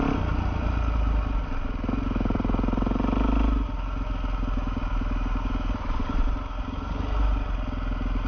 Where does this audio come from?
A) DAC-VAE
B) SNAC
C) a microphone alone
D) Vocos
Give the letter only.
C